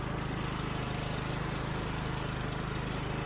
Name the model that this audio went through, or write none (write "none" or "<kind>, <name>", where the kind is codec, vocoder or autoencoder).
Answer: none